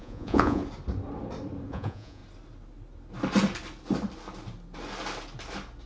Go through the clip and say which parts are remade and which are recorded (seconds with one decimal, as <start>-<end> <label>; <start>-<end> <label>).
0.0-0.6 remade; 0.6-1.7 recorded; 1.7-2.2 remade; 2.2-5.9 recorded